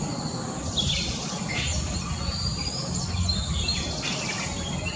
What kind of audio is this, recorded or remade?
recorded